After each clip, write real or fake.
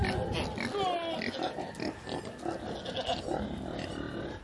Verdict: real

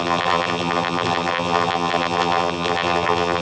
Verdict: fake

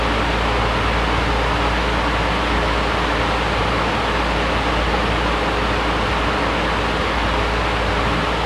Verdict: real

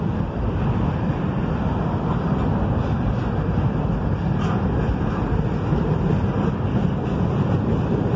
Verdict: real